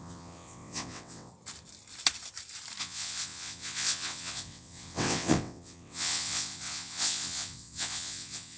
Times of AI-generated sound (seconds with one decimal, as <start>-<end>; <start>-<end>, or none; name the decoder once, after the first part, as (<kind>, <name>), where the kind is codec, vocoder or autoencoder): 0.0-1.3 (vocoder, WaveNeXt); 2.8-8.6